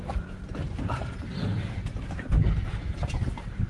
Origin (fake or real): fake